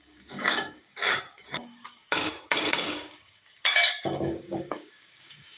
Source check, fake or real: fake